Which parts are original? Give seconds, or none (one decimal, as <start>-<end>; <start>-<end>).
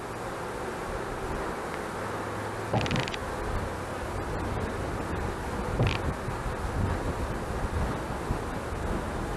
0.0-9.4